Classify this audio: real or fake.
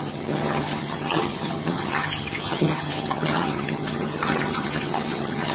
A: fake